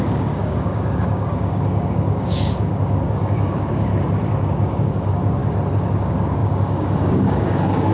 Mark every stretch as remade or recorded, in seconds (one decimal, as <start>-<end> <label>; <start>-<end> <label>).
0.0-3.9 remade; 3.9-4.8 recorded; 4.8-5.4 remade; 5.4-6.0 recorded; 6.0-7.9 remade